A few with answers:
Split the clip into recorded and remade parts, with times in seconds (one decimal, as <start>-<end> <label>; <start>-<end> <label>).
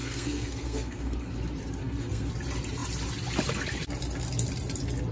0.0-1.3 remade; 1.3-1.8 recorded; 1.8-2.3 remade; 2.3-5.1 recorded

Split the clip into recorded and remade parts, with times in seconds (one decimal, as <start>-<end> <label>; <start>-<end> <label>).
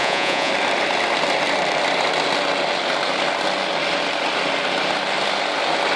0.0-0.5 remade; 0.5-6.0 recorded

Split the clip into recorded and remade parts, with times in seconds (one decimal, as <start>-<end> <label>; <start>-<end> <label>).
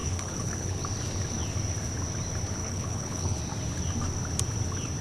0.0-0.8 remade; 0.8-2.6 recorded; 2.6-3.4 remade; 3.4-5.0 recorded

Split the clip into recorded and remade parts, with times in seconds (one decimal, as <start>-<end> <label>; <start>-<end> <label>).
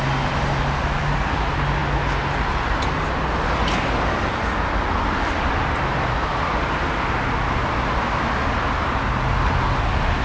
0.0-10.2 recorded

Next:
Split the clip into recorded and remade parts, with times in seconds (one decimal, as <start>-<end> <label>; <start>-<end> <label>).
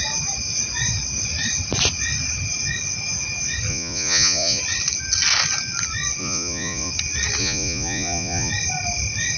0.0-3.7 recorded; 3.7-4.6 remade; 4.6-6.2 recorded; 6.2-6.9 remade; 6.9-7.4 recorded; 7.4-8.5 remade; 8.5-9.4 recorded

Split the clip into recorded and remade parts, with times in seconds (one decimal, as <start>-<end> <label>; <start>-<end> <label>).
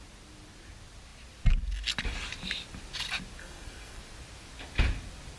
0.0-3.4 recorded; 3.4-4.0 remade; 4.0-5.4 recorded